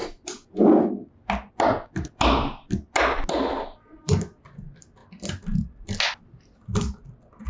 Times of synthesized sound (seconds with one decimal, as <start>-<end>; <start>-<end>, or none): none